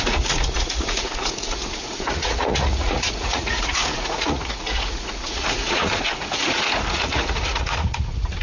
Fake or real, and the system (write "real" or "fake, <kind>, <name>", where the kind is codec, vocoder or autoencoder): fake, vocoder, Vocos